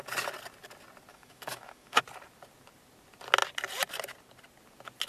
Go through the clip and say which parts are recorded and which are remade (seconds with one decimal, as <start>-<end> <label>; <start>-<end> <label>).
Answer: 0.0-1.1 recorded; 1.1-2.0 remade; 2.0-5.1 recorded